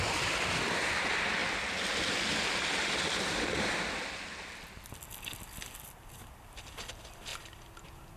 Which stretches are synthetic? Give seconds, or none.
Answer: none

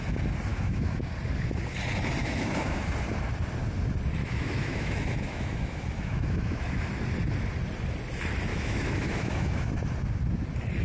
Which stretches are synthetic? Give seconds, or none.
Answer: 0.5-1.1 (autoencoder, DAC-VAE); 2.2-2.8; 4.2-6.9; 8.5-9.7